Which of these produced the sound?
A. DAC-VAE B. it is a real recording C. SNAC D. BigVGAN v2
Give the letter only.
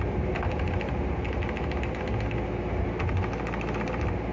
B